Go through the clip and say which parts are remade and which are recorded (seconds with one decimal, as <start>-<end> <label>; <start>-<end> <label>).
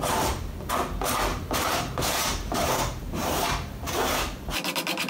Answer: 0.0-1.3 recorded; 1.3-4.4 remade; 4.4-5.1 recorded